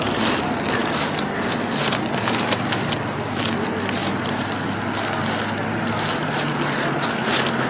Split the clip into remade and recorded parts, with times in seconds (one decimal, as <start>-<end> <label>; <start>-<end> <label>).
0.0-7.7 recorded